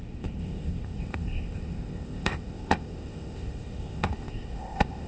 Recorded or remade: remade